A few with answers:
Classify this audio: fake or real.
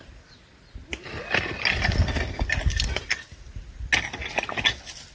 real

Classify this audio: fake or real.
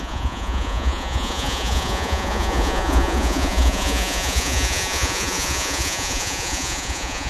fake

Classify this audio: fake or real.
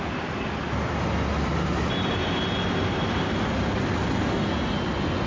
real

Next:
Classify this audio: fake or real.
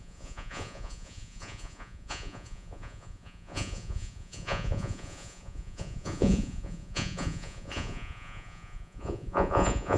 fake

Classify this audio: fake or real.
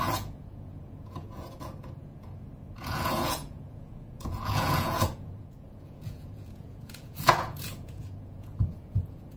fake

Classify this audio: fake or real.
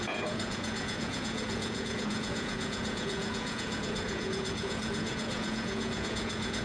fake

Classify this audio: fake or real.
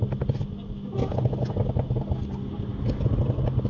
real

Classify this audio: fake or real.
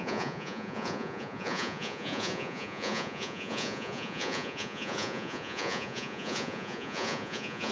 fake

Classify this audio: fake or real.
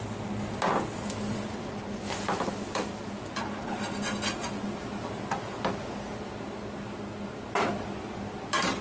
real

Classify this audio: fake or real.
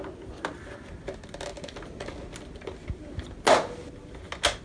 real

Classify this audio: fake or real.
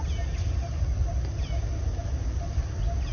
real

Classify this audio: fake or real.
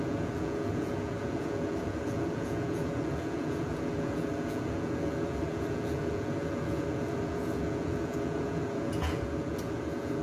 fake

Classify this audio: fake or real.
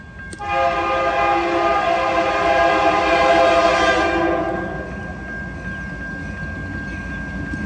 real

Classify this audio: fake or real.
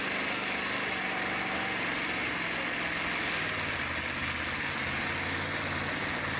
real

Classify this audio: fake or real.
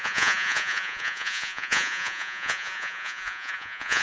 fake